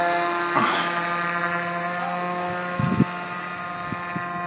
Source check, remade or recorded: recorded